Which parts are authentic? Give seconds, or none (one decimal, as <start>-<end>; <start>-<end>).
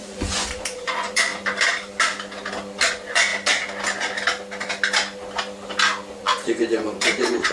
1.3-2.9; 3.3-6.1